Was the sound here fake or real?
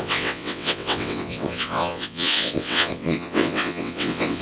fake